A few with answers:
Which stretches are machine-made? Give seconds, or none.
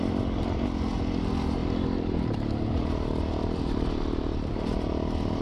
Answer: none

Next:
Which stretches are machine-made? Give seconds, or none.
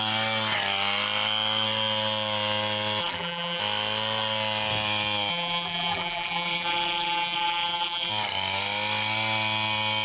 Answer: 3.0-3.6 (vocoder, BigVGAN v2); 5.3-8.1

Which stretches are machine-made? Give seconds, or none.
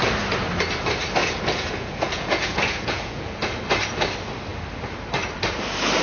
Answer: 1.2-3.6 (vocoder, Vocos)